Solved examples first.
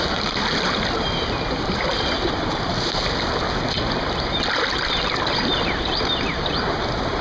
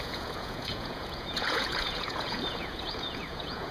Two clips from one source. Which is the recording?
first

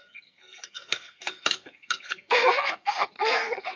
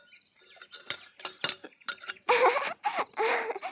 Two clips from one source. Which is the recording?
second